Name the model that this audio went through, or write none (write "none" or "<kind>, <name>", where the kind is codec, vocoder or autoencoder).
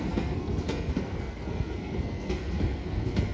codec, SNAC